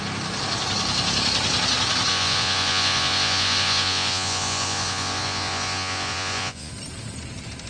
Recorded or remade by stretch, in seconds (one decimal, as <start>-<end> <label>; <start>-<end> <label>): 0.0-2.1 recorded; 2.1-6.7 remade; 6.7-7.7 recorded